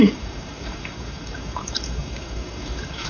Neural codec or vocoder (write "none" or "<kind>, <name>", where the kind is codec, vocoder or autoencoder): codec, DAC